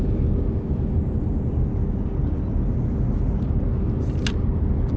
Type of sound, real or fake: real